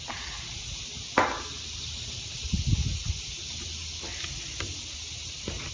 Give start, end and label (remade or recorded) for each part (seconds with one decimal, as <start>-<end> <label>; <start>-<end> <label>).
0.0-5.7 recorded